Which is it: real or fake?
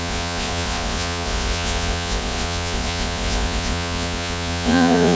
fake